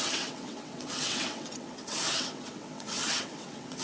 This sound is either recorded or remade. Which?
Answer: remade